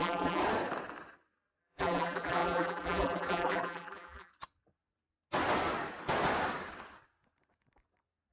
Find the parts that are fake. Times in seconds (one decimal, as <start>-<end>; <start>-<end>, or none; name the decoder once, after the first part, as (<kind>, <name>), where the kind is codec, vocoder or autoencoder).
0.0-0.4 (vocoder, BigVGAN v2); 1.6-4.3

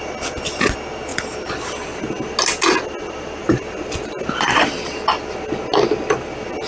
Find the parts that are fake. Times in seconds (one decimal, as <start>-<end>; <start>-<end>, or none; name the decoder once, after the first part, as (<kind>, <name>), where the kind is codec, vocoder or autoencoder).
1.1-2.1 (vocoder, BigVGAN v2); 3.4-4.6

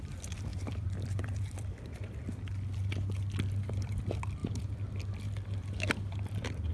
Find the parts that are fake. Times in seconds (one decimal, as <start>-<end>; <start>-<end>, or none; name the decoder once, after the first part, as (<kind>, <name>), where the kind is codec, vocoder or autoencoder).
0.5-4.0 (vocoder, BigVGAN v2)

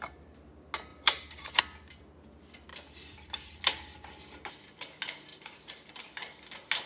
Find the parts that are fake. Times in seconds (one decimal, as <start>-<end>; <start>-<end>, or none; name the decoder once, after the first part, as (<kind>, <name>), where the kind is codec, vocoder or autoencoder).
0.9-1.6 (vocoder, BigVGAN v2); 2.7-3.6; 5.3-5.9

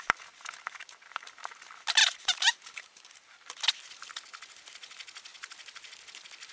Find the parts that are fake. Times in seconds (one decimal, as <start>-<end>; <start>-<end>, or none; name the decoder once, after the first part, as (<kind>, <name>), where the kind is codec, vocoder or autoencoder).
2.0-3.5 (vocoder, BigVGAN v2)

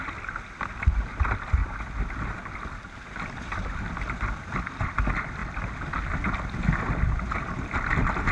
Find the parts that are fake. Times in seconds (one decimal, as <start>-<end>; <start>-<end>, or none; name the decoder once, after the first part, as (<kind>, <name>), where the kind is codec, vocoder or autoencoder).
none

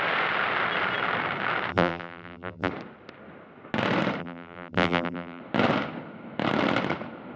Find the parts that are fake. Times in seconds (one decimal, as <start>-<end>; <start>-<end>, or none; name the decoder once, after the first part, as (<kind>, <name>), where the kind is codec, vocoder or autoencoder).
1.7-2.7 (vocoder, BigVGAN v2); 4.2-5.4